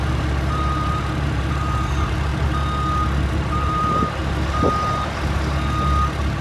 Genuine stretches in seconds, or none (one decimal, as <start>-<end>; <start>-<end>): 2.3-3.3; 4.2-6.4

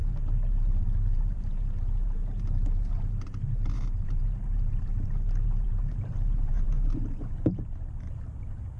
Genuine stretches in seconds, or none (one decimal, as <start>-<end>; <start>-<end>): none